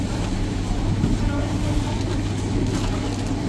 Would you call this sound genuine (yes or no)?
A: yes